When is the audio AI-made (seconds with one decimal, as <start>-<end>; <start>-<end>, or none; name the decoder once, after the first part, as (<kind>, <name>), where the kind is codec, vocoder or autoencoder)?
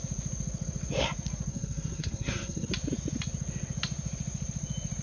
1.5-2.7 (codec, SNAC)